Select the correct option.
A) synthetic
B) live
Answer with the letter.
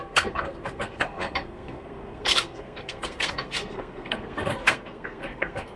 A